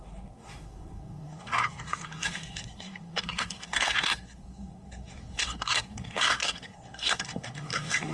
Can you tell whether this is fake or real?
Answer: fake